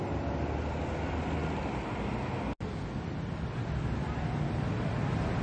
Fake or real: real